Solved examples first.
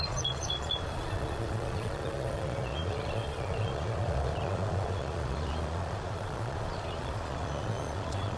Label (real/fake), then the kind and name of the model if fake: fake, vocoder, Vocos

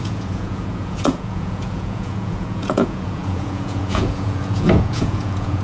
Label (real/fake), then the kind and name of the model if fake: fake, vocoder, Vocos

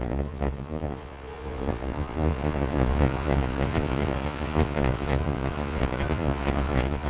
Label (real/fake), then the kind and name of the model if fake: fake, vocoder, Vocos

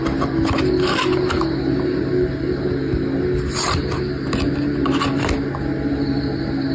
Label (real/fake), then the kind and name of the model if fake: real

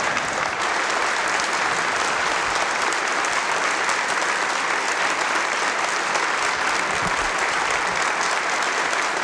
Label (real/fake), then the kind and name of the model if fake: real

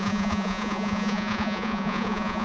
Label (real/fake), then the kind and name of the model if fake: fake, vocoder, Vocos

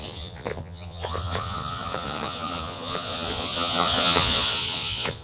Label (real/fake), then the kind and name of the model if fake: fake, vocoder, Vocos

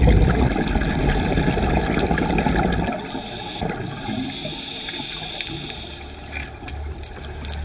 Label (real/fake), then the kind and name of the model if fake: real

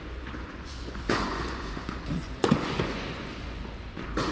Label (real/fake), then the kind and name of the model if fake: fake, vocoder, Vocos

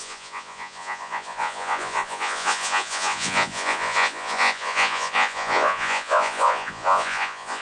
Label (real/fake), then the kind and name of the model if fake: fake, vocoder, Vocos